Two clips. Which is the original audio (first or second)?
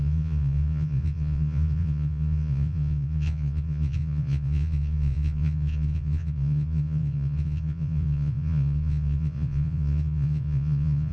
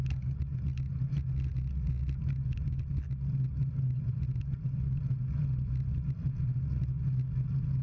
second